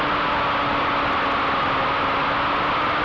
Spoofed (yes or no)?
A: no